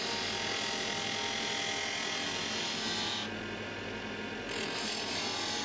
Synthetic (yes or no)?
no